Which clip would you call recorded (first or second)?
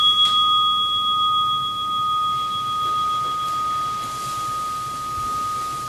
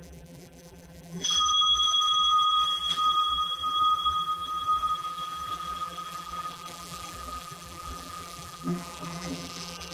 first